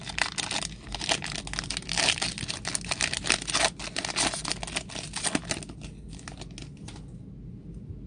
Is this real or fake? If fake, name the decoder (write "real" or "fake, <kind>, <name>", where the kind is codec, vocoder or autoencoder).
real